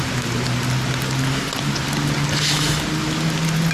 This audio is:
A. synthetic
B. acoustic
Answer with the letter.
B